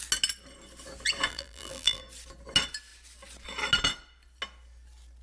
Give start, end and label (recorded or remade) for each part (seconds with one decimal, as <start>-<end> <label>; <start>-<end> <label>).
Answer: 0.0-1.3 recorded; 1.3-2.0 remade; 2.0-5.2 recorded